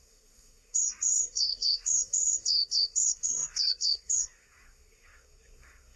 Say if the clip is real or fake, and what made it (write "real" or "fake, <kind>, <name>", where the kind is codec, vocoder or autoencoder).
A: fake, codec, SNAC